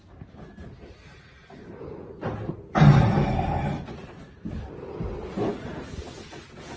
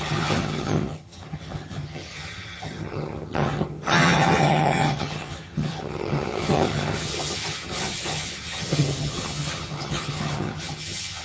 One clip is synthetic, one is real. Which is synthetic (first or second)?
second